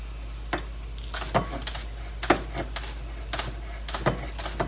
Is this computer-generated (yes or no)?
no